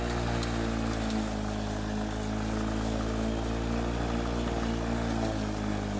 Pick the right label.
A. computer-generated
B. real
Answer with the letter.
B